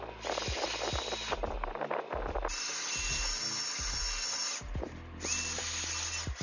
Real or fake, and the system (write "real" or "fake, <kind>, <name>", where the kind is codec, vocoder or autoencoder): real